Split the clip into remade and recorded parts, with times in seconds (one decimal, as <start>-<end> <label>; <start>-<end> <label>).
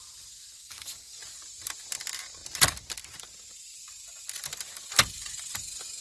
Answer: 0.0-0.6 recorded; 0.6-1.2 remade; 1.2-6.0 recorded